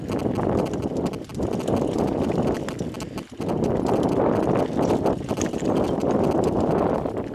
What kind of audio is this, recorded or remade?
recorded